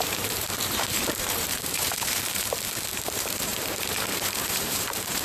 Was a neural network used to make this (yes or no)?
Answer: yes